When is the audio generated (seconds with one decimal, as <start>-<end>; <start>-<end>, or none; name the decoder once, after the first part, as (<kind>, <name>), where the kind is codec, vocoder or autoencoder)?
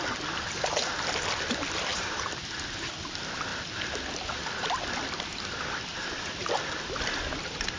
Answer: 1.9-3.1 (vocoder, BigVGAN v2); 5.9-6.6